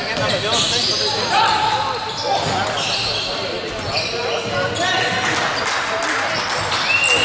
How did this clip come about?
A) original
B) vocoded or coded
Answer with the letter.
A